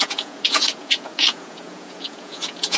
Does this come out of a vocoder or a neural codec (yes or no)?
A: yes